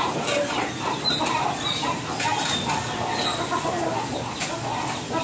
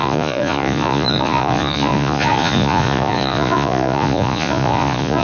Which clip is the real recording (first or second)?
first